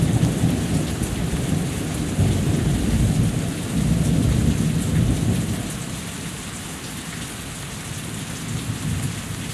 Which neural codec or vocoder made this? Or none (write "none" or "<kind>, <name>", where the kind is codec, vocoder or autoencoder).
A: none